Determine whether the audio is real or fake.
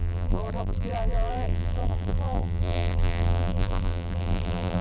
fake